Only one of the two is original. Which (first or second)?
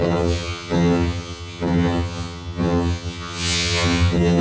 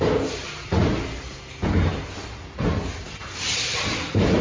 second